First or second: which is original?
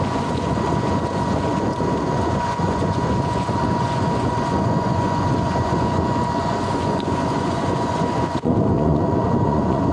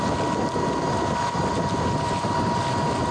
second